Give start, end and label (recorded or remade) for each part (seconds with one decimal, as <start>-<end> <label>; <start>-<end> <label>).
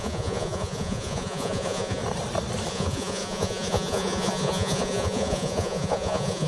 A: 0.0-2.0 remade; 2.0-2.7 recorded; 2.7-6.5 remade